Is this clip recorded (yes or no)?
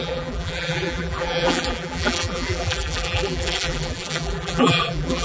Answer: no